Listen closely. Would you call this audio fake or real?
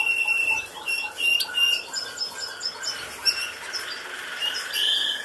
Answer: fake